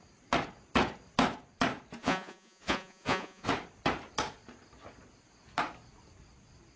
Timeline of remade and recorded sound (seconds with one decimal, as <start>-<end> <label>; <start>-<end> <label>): 0.0-2.0 recorded; 2.0-3.5 remade; 3.5-6.8 recorded